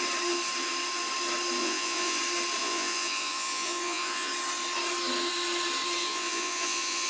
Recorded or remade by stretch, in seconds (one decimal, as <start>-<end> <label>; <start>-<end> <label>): 0.0-1.6 recorded; 1.6-2.2 remade; 2.2-2.6 recorded; 2.6-4.3 remade; 4.3-6.0 recorded; 6.0-7.1 remade